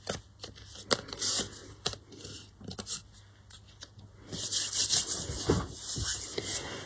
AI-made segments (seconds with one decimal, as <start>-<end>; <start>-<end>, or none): none